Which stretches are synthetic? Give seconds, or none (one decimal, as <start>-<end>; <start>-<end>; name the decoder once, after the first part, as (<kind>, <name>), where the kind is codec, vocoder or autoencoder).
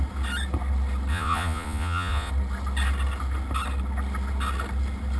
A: 1.1-2.3 (vocoder, Vocos)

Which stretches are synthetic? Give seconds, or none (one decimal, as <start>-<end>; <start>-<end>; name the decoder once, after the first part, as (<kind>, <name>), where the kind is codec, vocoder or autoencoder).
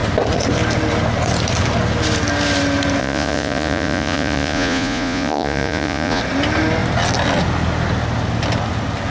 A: 3.0-6.2 (vocoder, Vocos)